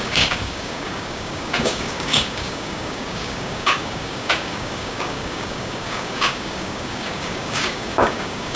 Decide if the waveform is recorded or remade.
remade